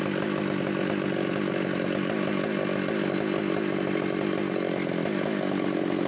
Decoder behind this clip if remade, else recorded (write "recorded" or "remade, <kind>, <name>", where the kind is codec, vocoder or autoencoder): recorded